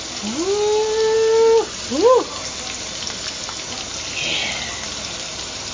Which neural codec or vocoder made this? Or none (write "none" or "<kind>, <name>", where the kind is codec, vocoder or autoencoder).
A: none